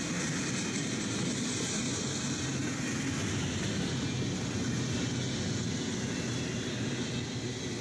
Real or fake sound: real